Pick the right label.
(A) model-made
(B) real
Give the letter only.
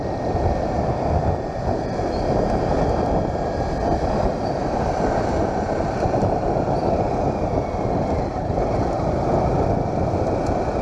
B